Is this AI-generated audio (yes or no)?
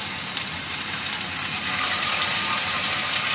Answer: yes